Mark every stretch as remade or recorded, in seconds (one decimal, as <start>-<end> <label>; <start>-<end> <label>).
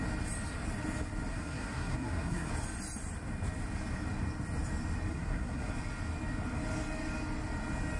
0.0-1.3 recorded; 1.3-2.5 remade; 2.5-5.1 recorded; 5.1-5.7 remade; 5.7-8.0 recorded